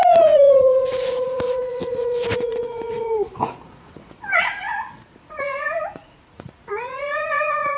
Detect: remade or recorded remade